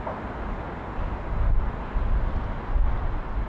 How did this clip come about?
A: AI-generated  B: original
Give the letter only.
B